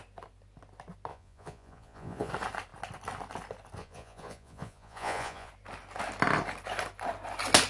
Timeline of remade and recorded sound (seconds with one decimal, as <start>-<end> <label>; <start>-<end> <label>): 0.0-1.1 recorded; 1.1-2.3 remade; 2.3-3.8 recorded; 3.8-5.5 remade; 5.5-7.7 recorded